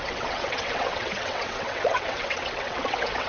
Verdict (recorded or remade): remade